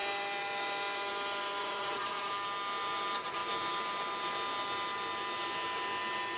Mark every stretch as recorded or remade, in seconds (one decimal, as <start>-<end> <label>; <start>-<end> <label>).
0.0-1.6 recorded; 1.6-2.3 remade; 2.3-6.4 recorded